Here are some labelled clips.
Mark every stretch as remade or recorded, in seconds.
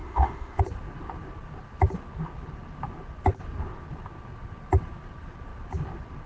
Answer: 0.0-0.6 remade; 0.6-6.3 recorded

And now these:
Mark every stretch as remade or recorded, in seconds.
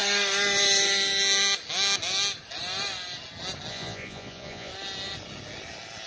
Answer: 0.0-3.7 recorded; 3.7-4.7 remade; 4.7-6.1 recorded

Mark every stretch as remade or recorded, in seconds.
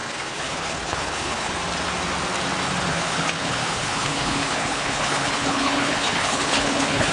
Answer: 0.0-1.5 remade; 1.5-2.9 recorded; 2.9-7.1 remade